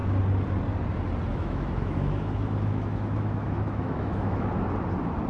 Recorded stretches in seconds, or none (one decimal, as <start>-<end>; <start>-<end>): 0.0-1.3; 4.5-5.3